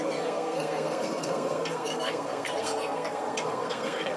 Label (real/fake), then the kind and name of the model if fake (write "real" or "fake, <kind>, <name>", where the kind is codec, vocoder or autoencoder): fake, codec, SNAC